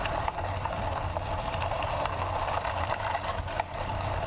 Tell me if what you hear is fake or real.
real